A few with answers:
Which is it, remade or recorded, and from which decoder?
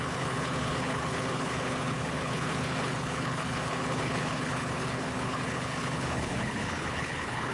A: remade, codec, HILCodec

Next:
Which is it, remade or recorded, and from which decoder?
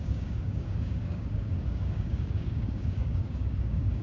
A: remade, codec, DAC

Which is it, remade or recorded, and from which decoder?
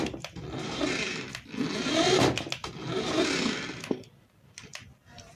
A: recorded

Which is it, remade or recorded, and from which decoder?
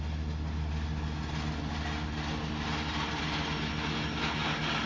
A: recorded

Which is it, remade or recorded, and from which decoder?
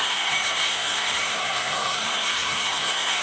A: remade, codec, SNAC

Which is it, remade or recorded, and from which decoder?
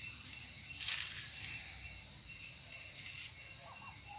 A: recorded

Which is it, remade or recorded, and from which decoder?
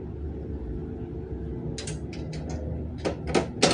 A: recorded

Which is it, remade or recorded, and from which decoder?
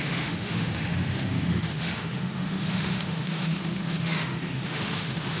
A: remade, autoencoder, DAC-VAE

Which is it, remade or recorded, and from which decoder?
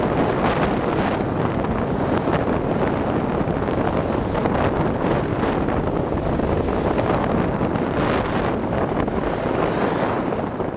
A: recorded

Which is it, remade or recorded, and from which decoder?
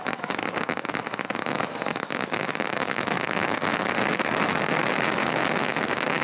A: remade, autoencoder, DAC-VAE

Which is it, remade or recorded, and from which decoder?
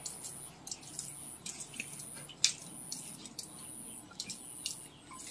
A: recorded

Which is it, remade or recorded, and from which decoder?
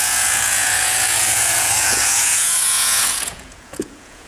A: remade, vocoder, Vocos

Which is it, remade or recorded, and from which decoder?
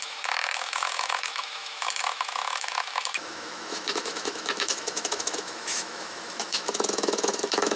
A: remade, autoencoder, DAC-VAE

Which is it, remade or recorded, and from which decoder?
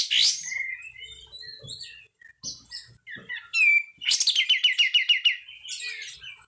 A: recorded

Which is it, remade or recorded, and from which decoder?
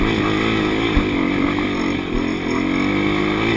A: recorded